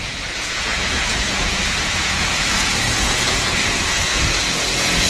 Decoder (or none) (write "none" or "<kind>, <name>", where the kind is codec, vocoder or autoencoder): vocoder, Vocos